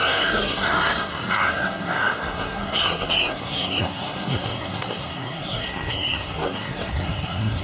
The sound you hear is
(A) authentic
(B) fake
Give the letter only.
B